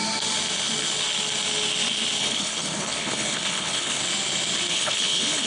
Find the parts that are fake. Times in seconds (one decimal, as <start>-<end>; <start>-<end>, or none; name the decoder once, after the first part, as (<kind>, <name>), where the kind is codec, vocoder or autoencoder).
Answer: 2.2-4.0 (codec, HILCodec); 4.7-5.5